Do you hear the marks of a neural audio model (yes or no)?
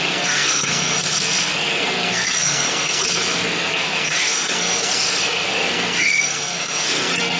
yes